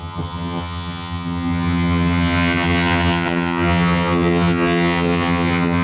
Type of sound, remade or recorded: remade